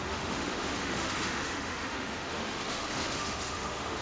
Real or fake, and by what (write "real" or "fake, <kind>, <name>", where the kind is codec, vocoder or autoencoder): fake, autoencoder, DAC-VAE